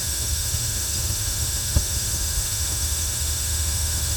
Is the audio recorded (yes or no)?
no